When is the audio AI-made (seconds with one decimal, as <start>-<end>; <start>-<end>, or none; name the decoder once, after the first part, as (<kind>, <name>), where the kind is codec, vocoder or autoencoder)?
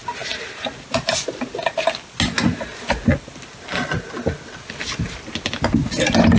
none